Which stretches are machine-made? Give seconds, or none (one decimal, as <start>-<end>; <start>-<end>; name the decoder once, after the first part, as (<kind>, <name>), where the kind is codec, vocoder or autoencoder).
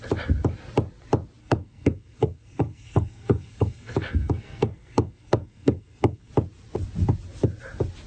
1.4-6.3 (codec, SNAC)